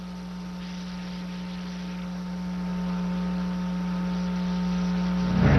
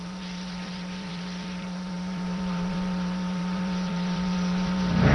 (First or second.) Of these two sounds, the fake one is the second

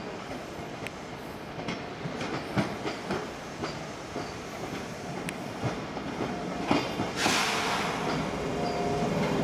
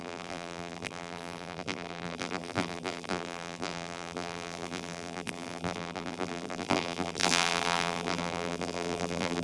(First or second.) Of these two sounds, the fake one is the second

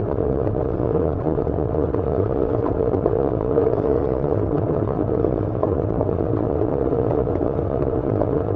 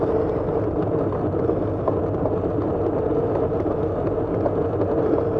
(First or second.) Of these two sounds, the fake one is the first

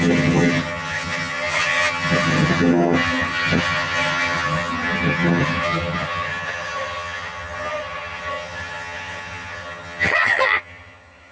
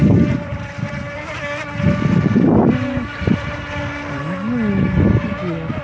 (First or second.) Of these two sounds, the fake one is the first